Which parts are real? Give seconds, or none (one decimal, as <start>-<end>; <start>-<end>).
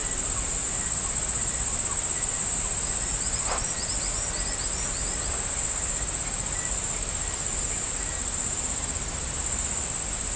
0.0-10.4